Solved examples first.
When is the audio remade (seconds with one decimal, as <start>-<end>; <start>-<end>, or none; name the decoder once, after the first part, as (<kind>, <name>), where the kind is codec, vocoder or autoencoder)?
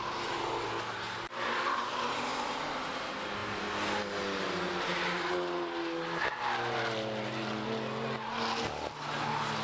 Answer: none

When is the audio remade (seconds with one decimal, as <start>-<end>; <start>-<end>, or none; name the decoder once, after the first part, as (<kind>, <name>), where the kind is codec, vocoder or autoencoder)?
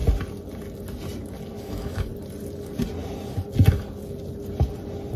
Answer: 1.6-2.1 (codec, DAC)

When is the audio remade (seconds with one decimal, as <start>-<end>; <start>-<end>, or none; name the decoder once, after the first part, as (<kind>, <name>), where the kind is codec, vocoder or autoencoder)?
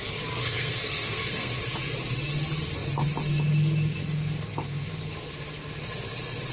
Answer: 0.4-1.6 (codec, SNAC)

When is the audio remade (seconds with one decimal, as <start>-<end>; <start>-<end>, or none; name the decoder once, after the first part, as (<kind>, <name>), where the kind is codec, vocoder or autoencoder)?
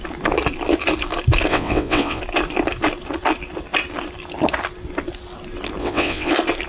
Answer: 1.5-2.2 (vocoder, WaveNeXt); 5.8-6.3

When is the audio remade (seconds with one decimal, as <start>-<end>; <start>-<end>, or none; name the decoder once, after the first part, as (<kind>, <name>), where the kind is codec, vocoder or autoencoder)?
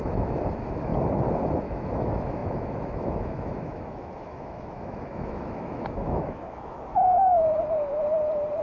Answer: 0.0-0.9 (autoencoder, DAC-VAE); 1.6-7.3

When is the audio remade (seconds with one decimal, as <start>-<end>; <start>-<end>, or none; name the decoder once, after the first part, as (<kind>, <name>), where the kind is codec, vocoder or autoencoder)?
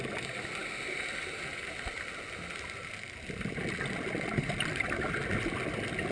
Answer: none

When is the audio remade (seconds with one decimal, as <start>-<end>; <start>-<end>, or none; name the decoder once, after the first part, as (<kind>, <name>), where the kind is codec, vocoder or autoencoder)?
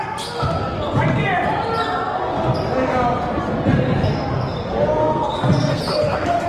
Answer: 5.0-5.8 (codec, SNAC)